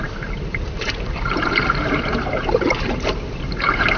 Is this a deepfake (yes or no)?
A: yes